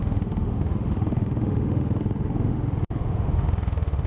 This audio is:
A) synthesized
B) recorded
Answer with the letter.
A